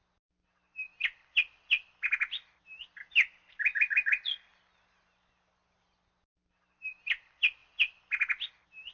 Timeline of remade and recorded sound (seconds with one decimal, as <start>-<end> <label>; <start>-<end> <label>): 0.0-8.9 recorded